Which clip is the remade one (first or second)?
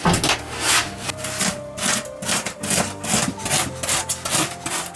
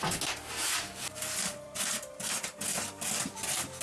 second